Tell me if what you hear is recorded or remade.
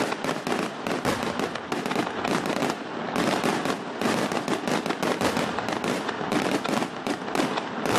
recorded